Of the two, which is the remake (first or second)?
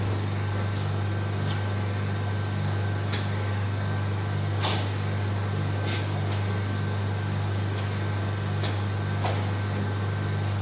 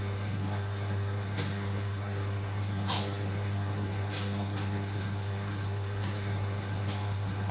second